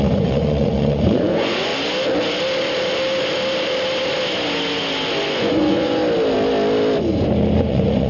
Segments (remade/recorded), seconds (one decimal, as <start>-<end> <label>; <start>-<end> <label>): 0.0-1.7 remade; 1.7-5.4 recorded; 5.4-6.0 remade; 6.0-7.6 recorded; 7.6-8.1 remade